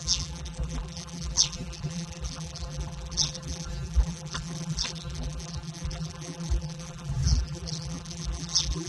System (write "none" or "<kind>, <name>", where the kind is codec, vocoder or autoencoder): vocoder, BigVGAN v2